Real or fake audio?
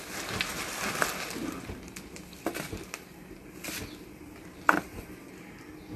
real